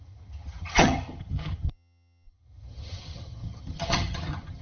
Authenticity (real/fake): fake